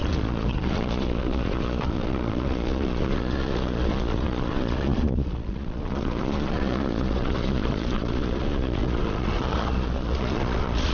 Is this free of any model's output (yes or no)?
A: no